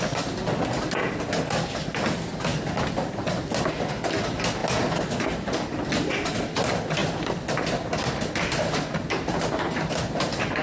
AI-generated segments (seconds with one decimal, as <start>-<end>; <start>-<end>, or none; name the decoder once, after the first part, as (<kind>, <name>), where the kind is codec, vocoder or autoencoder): none